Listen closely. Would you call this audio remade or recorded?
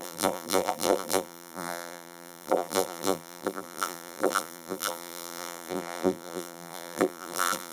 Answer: remade